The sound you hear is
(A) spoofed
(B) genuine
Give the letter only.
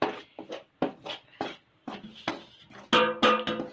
B